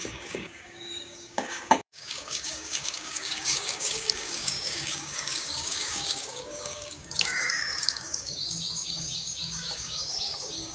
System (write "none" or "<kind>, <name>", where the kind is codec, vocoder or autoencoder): codec, DAC